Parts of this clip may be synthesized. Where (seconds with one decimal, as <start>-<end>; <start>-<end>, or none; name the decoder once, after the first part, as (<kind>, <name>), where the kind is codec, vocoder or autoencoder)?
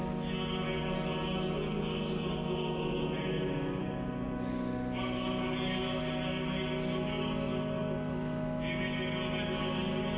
none